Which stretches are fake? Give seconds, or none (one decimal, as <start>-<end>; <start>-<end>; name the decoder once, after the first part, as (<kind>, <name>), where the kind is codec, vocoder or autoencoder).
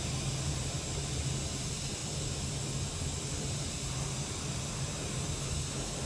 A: none